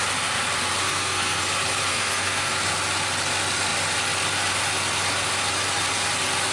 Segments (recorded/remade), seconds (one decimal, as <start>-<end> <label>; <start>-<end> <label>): 0.0-0.8 recorded; 0.8-1.4 remade; 1.4-1.9 recorded; 1.9-2.5 remade; 2.5-6.5 recorded